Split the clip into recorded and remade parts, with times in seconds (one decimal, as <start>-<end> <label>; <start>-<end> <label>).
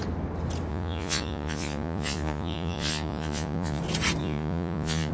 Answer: 0.0-0.7 recorded; 0.7-3.8 remade; 3.8-4.2 recorded; 4.2-5.1 remade